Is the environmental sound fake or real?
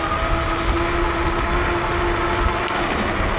real